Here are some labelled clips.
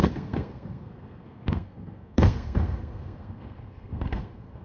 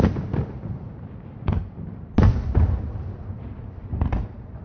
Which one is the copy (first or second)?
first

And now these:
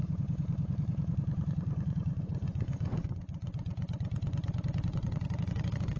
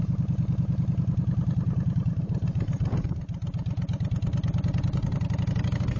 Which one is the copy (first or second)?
first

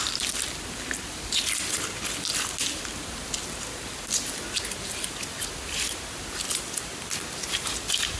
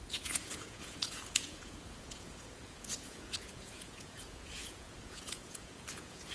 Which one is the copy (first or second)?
second